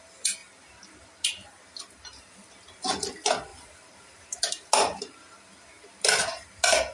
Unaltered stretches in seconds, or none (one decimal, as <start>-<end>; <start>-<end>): 0.0-3.5; 5.0-6.9